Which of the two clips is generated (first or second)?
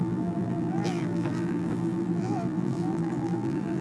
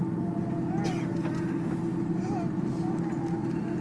first